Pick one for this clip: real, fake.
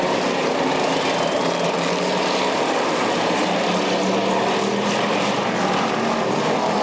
real